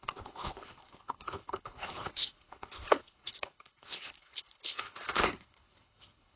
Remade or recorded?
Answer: remade